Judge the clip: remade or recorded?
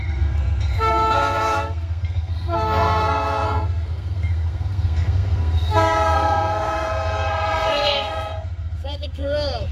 remade